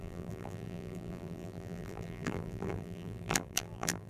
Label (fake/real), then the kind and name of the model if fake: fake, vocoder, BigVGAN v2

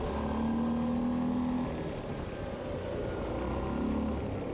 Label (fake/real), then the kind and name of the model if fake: real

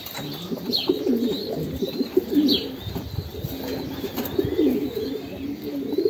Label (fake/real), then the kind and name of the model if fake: real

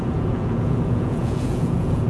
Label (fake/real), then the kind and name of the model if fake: fake, vocoder, Vocos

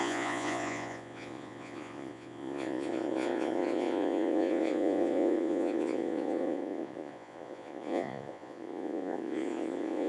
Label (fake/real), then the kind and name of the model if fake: fake, vocoder, Vocos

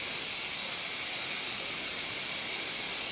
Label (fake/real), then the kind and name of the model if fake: real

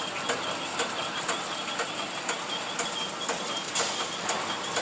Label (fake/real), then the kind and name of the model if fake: real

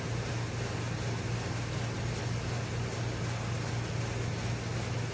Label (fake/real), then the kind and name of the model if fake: real